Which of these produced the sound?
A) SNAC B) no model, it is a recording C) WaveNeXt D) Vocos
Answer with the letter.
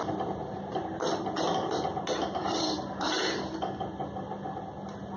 B